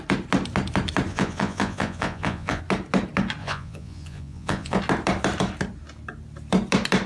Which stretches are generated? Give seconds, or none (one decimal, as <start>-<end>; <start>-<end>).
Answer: 1.1-2.6; 3.4-4.8